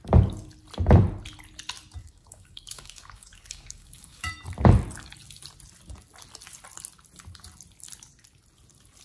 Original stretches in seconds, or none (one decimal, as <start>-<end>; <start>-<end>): 0.0-2.0; 4.3-9.0